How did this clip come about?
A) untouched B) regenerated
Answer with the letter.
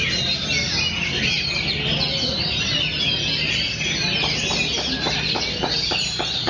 A